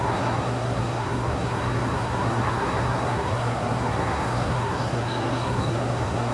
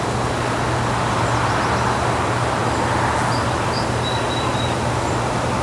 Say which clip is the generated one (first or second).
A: first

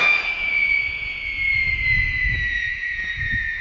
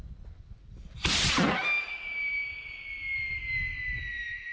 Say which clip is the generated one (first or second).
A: first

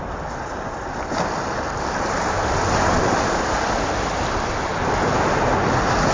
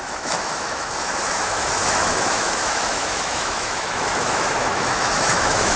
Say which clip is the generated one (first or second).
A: second